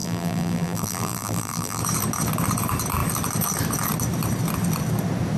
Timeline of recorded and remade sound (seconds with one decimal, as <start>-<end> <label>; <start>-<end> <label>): 0.0-1.8 remade; 1.8-5.4 recorded